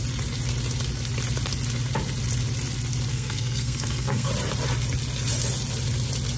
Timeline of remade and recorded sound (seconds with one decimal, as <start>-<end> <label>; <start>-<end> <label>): 0.0-3.1 recorded; 3.1-4.3 remade; 4.3-6.4 recorded